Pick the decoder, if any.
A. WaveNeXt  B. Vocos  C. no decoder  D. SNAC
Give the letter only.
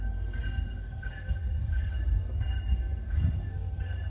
D